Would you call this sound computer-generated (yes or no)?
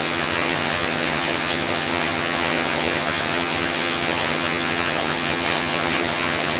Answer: yes